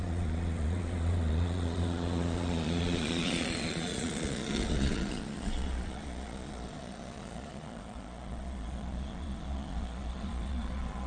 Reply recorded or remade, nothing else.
remade